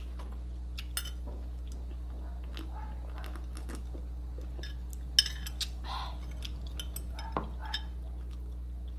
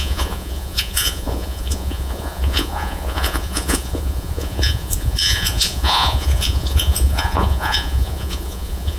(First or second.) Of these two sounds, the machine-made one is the second